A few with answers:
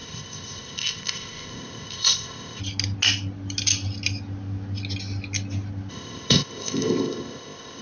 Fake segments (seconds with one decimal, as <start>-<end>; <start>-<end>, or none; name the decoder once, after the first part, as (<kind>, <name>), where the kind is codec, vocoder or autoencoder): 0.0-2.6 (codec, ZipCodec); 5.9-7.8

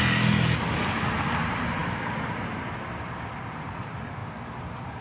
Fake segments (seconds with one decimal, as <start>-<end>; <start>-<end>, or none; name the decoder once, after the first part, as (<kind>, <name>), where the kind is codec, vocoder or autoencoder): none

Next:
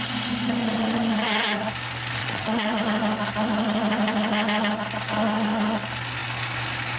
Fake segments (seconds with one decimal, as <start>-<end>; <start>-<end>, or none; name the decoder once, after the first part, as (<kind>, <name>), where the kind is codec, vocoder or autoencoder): 0.6-1.1 (vocoder, Vocos); 2.2-2.8

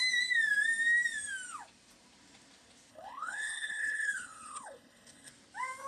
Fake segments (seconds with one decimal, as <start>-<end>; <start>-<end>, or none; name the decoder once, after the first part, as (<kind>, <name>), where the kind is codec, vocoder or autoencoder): 2.9-5.3 (codec, HILCodec)

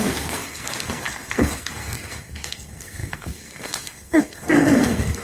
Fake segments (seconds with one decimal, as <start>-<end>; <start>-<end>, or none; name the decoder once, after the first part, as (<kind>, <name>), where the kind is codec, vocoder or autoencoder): 0.0-5.2 (codec, SNAC)